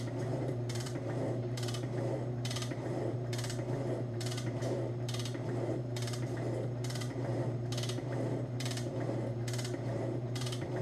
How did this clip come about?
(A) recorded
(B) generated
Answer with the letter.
B